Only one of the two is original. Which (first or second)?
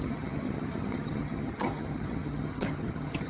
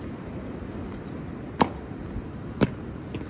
second